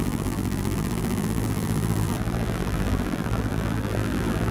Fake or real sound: fake